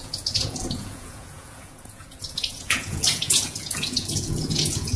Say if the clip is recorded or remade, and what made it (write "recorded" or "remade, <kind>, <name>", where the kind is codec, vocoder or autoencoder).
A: remade, vocoder, Vocos